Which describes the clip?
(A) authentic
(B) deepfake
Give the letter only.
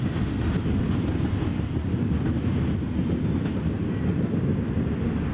A